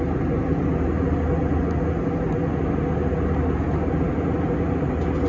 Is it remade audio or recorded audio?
recorded